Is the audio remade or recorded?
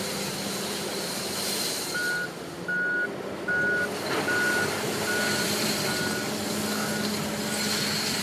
recorded